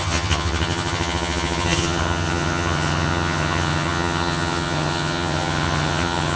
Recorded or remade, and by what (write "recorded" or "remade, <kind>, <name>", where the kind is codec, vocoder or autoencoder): remade, vocoder, HiFi-GAN